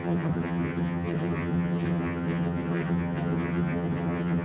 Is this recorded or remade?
remade